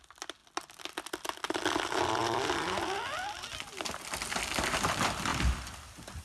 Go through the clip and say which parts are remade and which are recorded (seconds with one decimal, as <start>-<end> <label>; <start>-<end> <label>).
0.0-2.2 recorded; 2.2-3.0 remade; 3.0-5.3 recorded; 5.3-6.2 remade